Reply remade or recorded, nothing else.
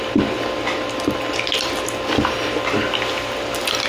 recorded